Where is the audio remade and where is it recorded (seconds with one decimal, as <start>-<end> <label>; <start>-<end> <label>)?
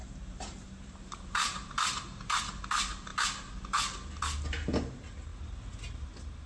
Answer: 0.0-2.4 remade; 2.4-6.5 recorded